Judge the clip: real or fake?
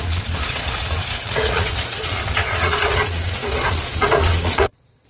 fake